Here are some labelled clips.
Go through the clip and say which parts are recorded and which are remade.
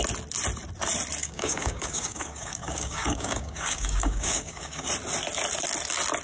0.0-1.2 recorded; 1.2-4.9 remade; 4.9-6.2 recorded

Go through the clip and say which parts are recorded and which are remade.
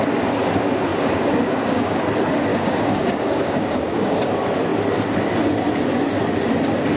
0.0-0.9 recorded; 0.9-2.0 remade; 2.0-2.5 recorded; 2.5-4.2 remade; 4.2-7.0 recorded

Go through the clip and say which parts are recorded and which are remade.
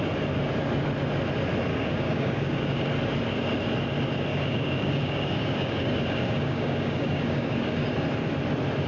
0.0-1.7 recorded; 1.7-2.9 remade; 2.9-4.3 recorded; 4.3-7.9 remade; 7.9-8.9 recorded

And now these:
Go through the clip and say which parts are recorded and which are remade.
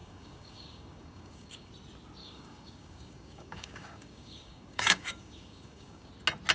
0.0-1.7 remade; 1.7-2.2 recorded; 2.2-6.1 remade; 6.1-6.5 recorded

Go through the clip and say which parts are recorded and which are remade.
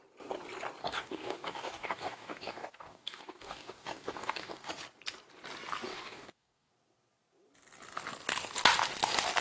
0.0-0.8 recorded; 0.8-4.7 remade; 4.7-5.9 recorded; 5.9-6.7 remade; 6.7-9.4 recorded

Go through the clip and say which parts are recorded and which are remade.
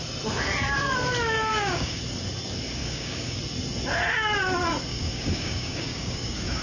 0.0-1.5 recorded; 1.5-2.0 remade; 2.0-2.8 recorded; 2.8-3.4 remade; 3.4-4.9 recorded; 4.9-6.6 remade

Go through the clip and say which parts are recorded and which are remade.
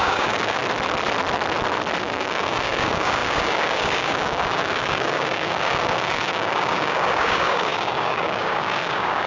0.0-0.6 remade; 0.6-2.0 recorded; 2.0-9.3 remade